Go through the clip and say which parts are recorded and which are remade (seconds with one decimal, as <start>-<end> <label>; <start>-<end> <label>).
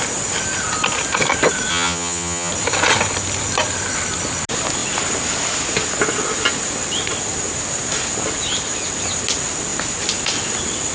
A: 0.0-1.7 recorded; 1.7-2.5 remade; 2.5-10.9 recorded